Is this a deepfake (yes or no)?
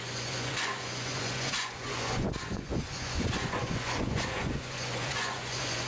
yes